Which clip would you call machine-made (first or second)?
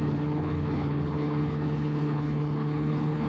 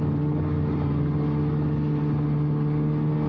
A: first